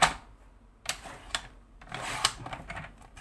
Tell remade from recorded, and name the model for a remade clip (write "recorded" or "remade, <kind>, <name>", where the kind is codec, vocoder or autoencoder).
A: recorded